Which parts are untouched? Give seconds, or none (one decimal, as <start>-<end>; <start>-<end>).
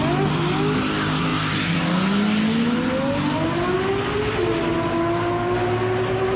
0.0-6.4